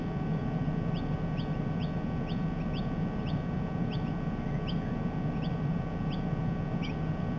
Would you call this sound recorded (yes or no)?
yes